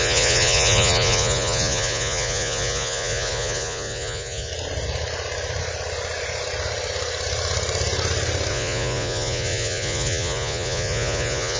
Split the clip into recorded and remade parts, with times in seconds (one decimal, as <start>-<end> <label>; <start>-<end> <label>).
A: 0.0-4.5 remade; 4.5-8.5 recorded; 8.5-11.6 remade